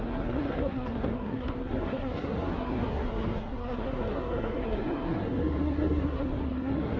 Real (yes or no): no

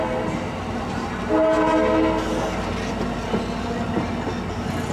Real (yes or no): yes